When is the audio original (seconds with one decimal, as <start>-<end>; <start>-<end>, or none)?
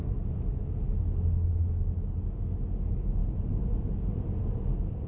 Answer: 0.0-5.1